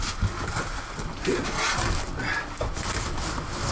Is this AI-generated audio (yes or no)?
no